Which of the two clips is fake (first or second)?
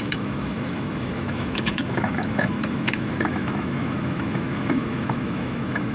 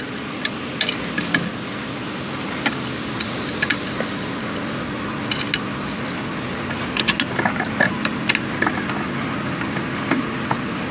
first